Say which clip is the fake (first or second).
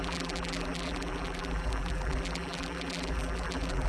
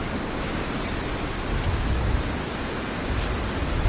first